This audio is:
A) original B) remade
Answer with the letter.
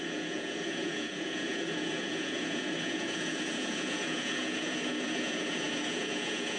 B